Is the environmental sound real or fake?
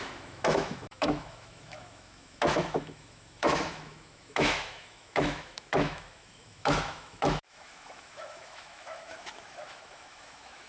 fake